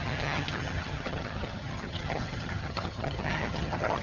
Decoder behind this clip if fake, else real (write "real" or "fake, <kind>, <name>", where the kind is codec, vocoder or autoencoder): fake, vocoder, HiFi-GAN